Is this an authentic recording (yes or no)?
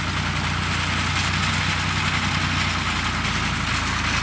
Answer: yes